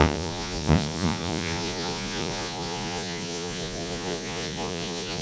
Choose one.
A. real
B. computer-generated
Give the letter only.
B